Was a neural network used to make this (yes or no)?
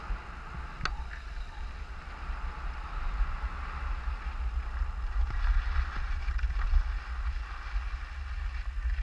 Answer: no